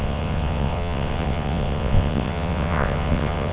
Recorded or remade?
remade